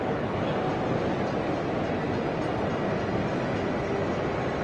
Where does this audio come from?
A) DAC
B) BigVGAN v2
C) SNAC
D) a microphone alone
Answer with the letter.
D